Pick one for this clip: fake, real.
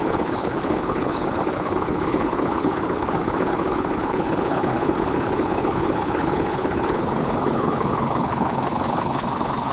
fake